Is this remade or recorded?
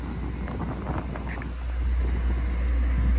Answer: recorded